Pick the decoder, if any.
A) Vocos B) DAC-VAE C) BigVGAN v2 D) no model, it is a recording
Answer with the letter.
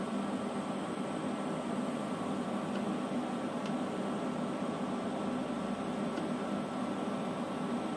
D